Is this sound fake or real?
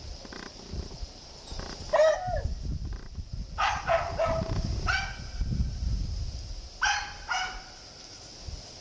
real